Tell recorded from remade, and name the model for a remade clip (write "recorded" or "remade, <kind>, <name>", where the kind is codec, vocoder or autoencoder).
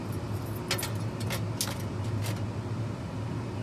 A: recorded